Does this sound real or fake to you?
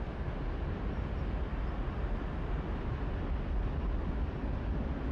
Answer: real